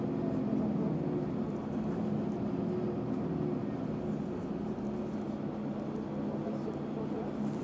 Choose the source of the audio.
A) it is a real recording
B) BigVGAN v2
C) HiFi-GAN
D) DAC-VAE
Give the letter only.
A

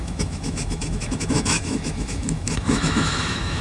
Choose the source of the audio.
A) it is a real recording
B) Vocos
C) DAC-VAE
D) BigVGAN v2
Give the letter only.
C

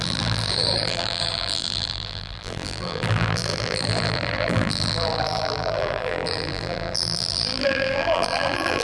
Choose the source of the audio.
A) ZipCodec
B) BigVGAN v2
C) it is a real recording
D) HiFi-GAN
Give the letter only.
B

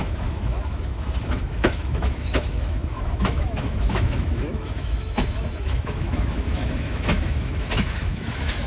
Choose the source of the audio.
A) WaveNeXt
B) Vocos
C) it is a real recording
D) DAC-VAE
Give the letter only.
D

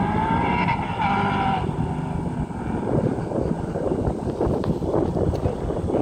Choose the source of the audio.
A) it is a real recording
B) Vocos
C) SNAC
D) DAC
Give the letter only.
A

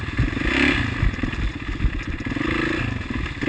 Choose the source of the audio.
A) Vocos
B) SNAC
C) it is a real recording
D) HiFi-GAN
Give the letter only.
C